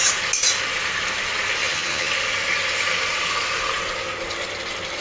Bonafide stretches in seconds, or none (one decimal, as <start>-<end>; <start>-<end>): 0.0-1.6; 2.1-5.0